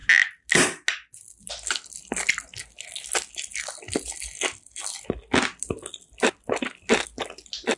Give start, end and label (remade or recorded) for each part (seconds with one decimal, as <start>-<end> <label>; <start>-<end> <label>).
0.0-7.8 recorded